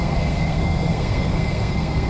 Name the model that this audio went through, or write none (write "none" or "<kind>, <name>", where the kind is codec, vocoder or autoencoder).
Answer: codec, SNAC